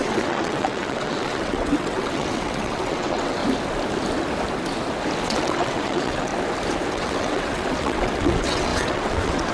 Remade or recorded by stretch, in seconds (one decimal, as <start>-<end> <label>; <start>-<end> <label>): 0.0-3.4 remade; 3.4-5.2 recorded; 5.2-6.3 remade; 6.3-6.9 recorded; 6.9-9.5 remade